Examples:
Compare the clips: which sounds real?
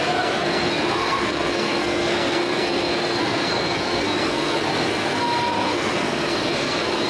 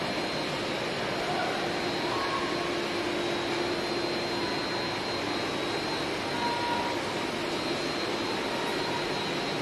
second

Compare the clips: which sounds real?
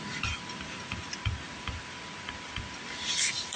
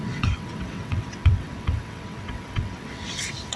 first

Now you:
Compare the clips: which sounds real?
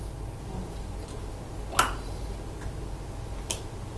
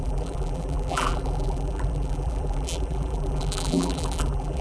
first